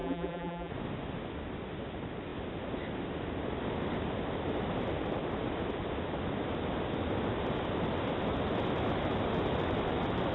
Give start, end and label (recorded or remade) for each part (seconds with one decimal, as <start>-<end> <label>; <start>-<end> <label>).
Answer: 0.0-0.7 remade; 0.7-10.3 recorded